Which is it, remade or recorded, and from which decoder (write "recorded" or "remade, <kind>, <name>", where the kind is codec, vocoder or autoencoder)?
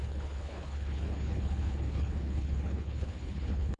remade, codec, HILCodec